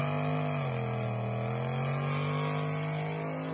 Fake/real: real